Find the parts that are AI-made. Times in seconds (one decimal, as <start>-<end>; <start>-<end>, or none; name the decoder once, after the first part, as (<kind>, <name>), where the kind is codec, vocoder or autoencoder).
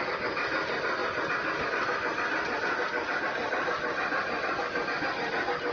none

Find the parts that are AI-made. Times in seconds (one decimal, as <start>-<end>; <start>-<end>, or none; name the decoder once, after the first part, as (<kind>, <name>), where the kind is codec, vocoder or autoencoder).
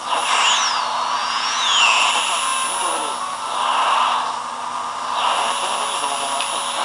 1.2-2.1 (vocoder, Vocos)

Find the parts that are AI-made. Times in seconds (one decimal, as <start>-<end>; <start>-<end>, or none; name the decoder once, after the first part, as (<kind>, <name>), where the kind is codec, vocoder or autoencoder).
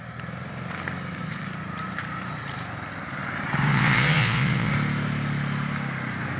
3.7-4.7 (vocoder, Vocos)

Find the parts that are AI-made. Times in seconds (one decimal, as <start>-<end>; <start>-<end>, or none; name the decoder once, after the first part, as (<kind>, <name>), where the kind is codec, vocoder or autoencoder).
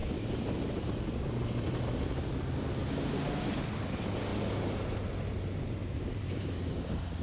0.0-0.9 (vocoder, BigVGAN v2); 5.8-6.5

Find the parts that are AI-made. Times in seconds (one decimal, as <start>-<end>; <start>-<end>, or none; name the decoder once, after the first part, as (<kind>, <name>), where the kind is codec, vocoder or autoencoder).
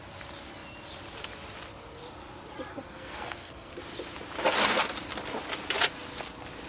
2.7-3.8 (codec, SNAC)